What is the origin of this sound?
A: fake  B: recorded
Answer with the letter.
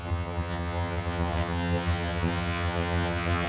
A